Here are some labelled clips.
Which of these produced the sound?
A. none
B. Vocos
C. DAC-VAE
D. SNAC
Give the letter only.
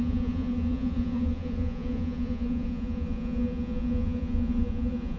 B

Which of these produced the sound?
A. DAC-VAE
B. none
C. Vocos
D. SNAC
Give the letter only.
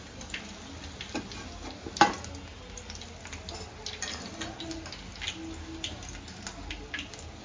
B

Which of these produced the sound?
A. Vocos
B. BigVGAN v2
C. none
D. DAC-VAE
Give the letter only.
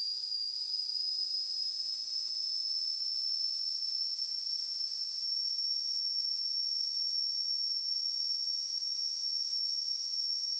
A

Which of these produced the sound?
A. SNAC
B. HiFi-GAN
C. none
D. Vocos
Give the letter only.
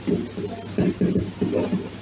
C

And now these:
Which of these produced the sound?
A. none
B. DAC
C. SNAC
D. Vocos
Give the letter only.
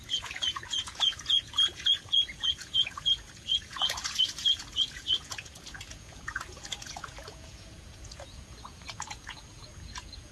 D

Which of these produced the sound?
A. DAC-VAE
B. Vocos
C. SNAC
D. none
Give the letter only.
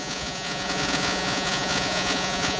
B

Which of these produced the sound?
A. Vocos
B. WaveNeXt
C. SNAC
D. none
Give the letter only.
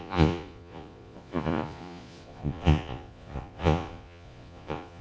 A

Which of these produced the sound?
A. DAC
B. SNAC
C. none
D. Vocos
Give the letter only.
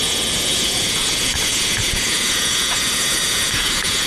D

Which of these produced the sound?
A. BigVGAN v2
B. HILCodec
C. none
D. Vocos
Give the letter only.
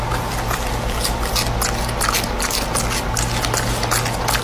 C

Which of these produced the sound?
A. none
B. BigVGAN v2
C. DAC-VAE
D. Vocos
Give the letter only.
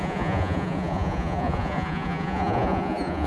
D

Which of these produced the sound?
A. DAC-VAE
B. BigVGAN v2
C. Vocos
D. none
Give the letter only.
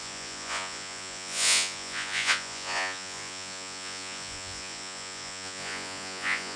C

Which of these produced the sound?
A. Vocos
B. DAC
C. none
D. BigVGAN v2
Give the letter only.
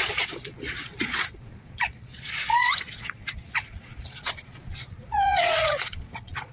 A